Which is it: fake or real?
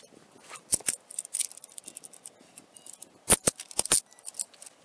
real